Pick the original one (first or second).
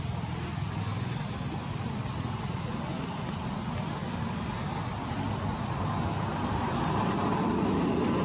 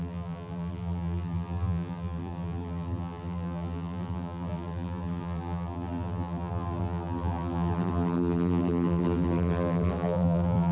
first